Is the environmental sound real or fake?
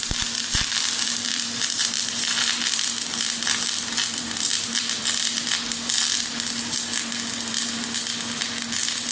fake